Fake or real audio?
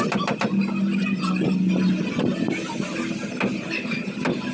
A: real